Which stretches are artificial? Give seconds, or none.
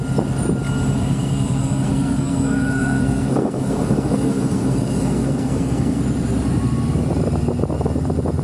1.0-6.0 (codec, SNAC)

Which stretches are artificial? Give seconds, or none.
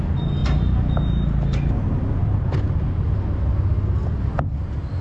none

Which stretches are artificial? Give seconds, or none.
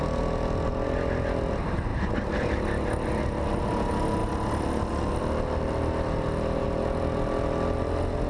none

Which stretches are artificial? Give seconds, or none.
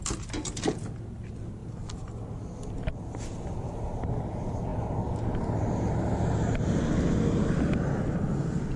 none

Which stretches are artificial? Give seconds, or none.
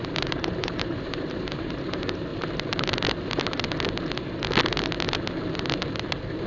0.0-2.3 (vocoder, BigVGAN v2)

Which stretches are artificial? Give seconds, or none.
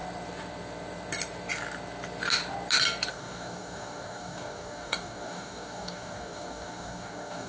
3.1-7.5 (codec, DAC)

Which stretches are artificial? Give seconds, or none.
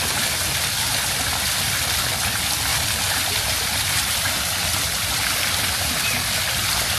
2.7-7.0 (vocoder, BigVGAN v2)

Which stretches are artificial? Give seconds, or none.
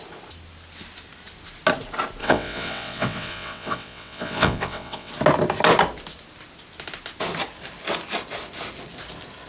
2.2-5.1 (vocoder, WaveNeXt)